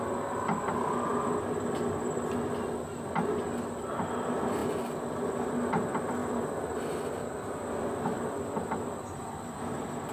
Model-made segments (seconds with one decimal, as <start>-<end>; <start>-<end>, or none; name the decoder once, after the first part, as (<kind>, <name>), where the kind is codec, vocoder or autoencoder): none